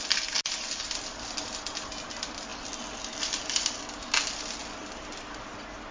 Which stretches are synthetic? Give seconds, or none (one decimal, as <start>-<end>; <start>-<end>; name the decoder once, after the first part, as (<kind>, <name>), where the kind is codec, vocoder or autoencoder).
2.5-3.8 (vocoder, BigVGAN v2); 4.6-5.2